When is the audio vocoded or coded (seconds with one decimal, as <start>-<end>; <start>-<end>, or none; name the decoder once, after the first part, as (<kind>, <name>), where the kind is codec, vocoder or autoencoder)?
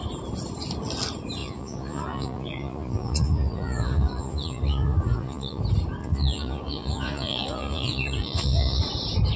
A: 1.4-5.6 (vocoder, Vocos); 6.0-8.8